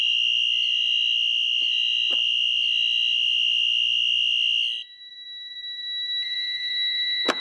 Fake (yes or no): yes